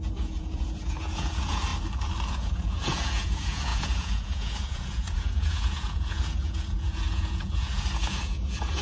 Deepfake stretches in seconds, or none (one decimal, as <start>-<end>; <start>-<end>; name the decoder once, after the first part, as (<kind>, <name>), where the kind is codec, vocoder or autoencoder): 0.0-1.7 (vocoder, Vocos); 2.3-8.8